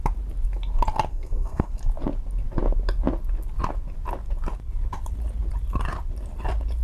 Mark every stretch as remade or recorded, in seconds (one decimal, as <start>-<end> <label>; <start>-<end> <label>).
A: 0.0-1.1 recorded; 1.1-1.7 remade; 1.7-6.8 recorded